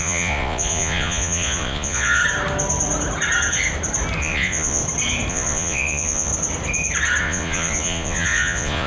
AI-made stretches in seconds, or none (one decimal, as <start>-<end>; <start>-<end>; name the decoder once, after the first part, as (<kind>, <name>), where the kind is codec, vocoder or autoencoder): 0.0-2.2 (vocoder, Vocos); 4.2-4.8; 5.3-6.3; 7.2-8.9